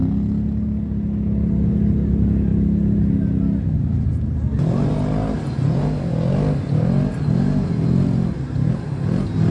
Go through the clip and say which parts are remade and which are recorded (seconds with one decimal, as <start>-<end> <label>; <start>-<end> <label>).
0.0-9.5 recorded